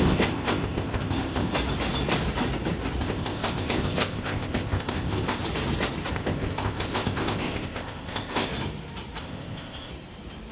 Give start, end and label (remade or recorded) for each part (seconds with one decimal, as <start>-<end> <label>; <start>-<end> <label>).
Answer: 0.0-1.5 remade; 1.5-3.0 recorded; 3.0-5.4 remade; 5.4-6.1 recorded; 6.1-8.5 remade; 8.5-9.2 recorded; 9.2-9.9 remade; 9.9-10.5 recorded